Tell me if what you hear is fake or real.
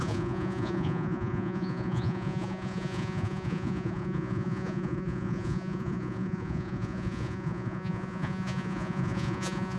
fake